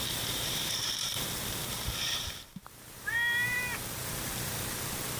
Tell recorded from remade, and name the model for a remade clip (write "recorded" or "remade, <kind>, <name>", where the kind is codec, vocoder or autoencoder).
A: remade, vocoder, BigVGAN v2